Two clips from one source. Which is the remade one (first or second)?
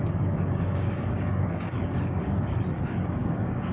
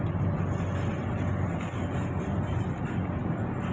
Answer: first